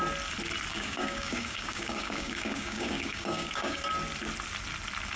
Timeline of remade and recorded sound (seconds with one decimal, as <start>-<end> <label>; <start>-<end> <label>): 0.0-0.7 recorded; 0.7-3.8 remade; 3.8-5.2 recorded

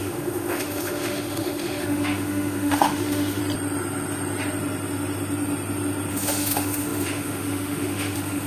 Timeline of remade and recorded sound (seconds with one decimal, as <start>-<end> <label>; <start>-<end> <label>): 0.0-3.4 remade; 3.4-6.1 recorded; 6.1-8.5 remade

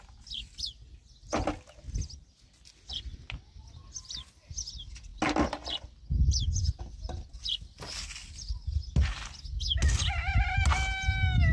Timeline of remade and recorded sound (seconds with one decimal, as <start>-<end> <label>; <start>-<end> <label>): 0.0-11.5 recorded

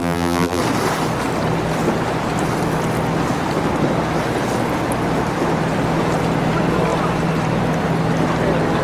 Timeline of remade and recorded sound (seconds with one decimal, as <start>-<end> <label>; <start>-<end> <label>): 0.0-0.6 remade; 0.6-8.8 recorded

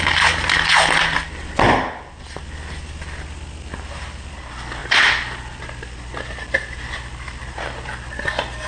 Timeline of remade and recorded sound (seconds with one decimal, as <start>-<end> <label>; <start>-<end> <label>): 0.0-8.7 recorded

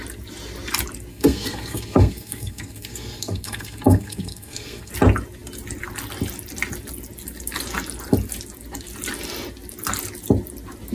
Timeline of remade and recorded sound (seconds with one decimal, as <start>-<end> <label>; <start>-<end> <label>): 0.0-1.1 recorded; 1.1-4.9 remade; 4.9-10.9 recorded

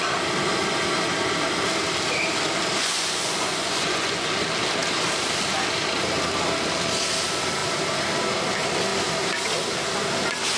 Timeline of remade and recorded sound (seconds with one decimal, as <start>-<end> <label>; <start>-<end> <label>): 0.0-2.8 recorded; 2.8-4.3 remade; 4.3-10.6 recorded